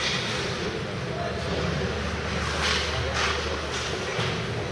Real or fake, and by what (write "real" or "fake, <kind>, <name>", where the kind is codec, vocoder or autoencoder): real